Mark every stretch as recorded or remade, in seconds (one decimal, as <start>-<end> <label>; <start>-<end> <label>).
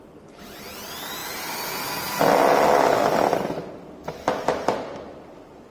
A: 0.0-5.7 recorded